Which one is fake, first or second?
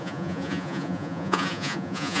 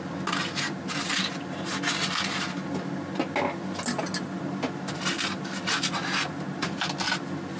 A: first